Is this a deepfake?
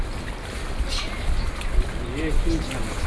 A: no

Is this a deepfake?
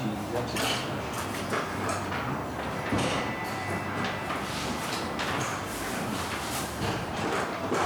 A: no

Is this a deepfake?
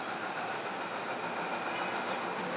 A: no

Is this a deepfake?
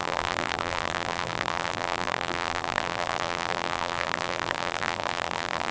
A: yes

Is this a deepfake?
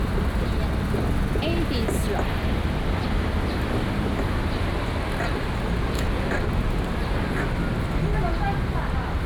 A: no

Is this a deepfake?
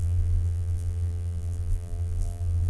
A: yes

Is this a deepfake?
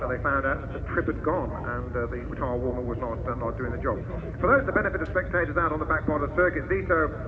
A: no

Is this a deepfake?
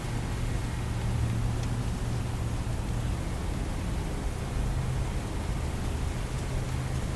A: no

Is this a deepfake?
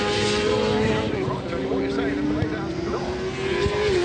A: no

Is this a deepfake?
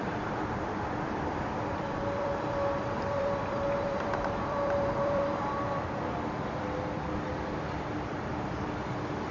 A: yes